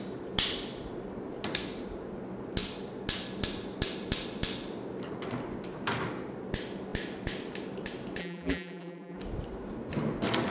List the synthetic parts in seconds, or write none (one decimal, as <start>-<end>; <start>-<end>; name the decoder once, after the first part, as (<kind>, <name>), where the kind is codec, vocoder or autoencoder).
8.2-9.2 (vocoder, BigVGAN v2)